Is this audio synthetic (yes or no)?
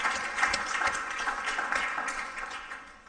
yes